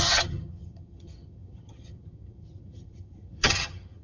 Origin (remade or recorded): remade